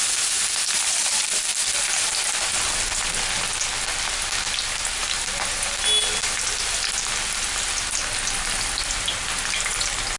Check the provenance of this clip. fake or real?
real